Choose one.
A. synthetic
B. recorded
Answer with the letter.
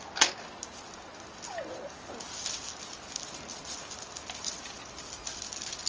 B